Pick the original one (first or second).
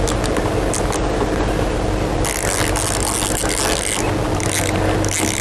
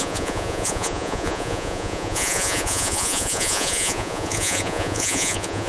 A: first